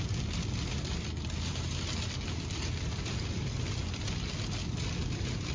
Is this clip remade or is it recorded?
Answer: recorded